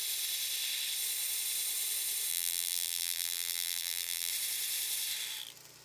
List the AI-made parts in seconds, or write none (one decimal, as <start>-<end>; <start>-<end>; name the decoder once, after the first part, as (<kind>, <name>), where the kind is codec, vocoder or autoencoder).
2.3-4.3 (vocoder, BigVGAN v2)